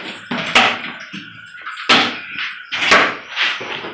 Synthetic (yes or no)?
no